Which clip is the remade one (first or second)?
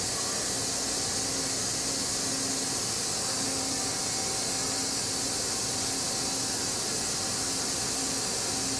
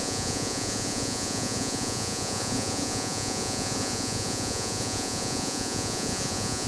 second